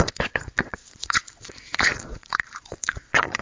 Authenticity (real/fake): fake